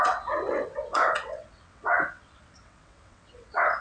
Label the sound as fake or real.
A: fake